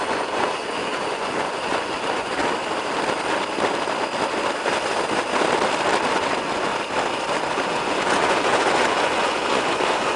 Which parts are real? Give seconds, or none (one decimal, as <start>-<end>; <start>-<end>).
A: 2.4-6.1; 6.7-7.5